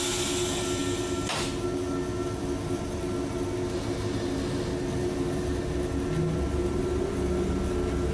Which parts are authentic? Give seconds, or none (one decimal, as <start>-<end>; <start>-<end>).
0.0-8.1